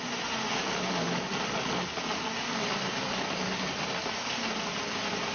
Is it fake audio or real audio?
real